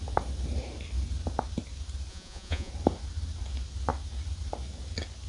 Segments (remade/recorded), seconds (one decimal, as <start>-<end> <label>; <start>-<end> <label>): 0.0-2.1 recorded; 2.1-2.7 remade; 2.7-5.3 recorded